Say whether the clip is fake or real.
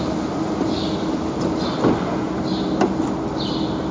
real